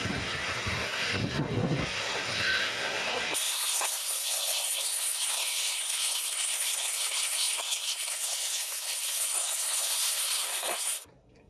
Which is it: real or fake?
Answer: fake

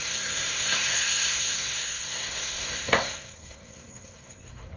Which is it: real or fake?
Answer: fake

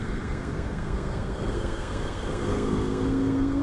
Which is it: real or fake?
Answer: fake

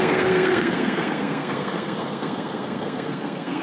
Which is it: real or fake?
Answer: fake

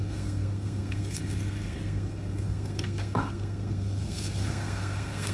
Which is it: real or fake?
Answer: fake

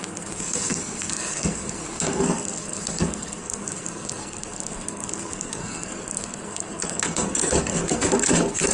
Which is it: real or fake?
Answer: fake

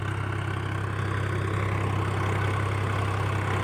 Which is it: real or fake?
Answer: real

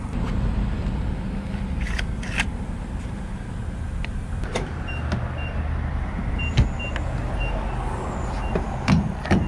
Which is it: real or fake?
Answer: real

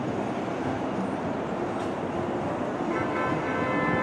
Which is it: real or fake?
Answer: real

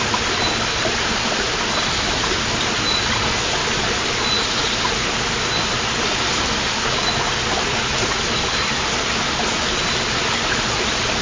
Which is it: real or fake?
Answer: real